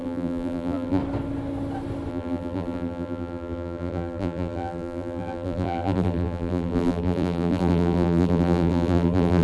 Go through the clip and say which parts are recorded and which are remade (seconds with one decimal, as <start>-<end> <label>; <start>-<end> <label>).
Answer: 0.0-1.0 remade; 1.0-2.1 recorded; 2.1-9.4 remade